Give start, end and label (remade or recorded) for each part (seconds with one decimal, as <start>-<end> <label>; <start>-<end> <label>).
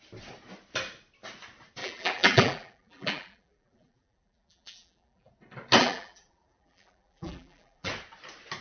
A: 0.0-1.8 recorded; 1.8-5.3 remade; 5.3-5.8 recorded; 5.8-7.9 remade; 7.9-8.6 recorded